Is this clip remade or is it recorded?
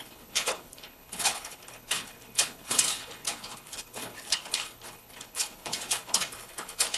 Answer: remade